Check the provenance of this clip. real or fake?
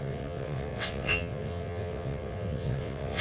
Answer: fake